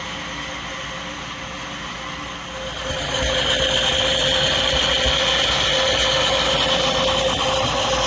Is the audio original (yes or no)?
yes